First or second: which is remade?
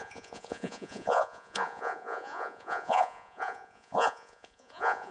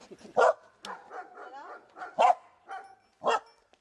first